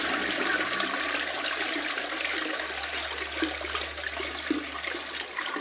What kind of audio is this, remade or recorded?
recorded